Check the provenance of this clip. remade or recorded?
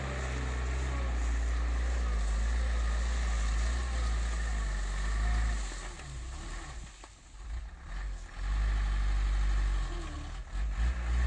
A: recorded